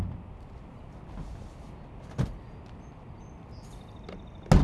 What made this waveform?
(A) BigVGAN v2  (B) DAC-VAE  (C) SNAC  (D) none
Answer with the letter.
D